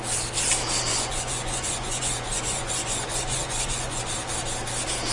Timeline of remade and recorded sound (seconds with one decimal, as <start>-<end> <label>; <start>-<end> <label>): 0.0-0.9 recorded; 0.9-4.0 remade; 4.0-5.1 recorded